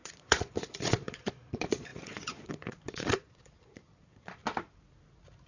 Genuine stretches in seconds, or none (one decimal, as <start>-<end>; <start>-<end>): 4.4-5.5